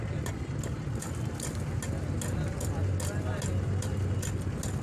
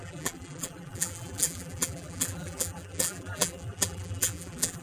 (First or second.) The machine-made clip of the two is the second